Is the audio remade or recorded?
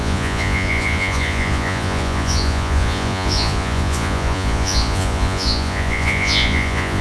remade